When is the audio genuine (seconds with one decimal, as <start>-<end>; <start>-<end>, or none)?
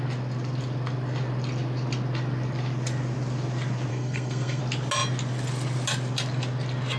0.0-3.9; 4.6-7.0